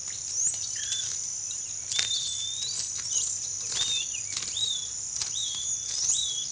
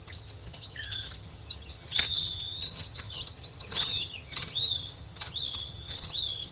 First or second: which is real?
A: first